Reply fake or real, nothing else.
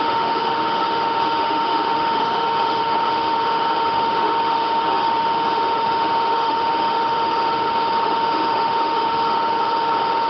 fake